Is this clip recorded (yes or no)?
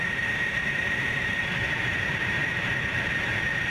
no